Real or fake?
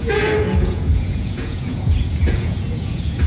fake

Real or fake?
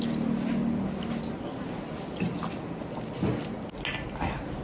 real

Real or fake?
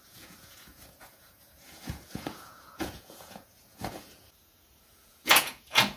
fake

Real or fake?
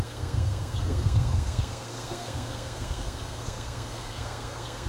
fake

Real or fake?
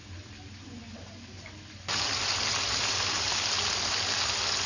real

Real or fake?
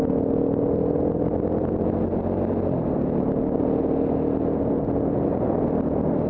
real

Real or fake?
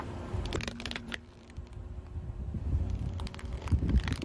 fake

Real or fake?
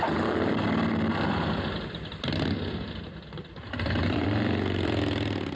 fake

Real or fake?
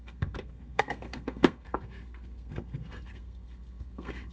fake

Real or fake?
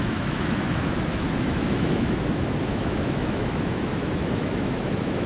fake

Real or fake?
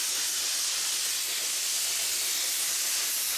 real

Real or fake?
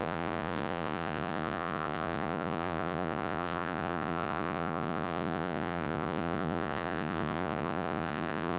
fake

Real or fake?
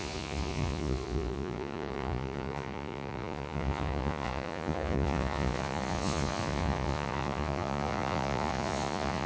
fake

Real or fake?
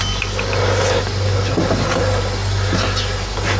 real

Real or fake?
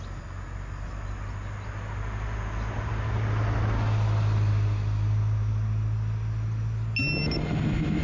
real